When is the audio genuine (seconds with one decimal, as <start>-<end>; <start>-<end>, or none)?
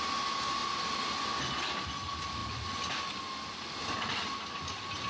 0.0-5.1